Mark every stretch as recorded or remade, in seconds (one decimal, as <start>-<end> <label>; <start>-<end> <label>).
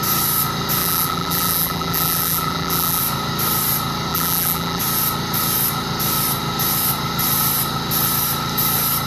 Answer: 0.0-0.8 recorded; 0.8-3.0 remade; 3.0-4.1 recorded; 4.1-4.8 remade; 4.8-9.1 recorded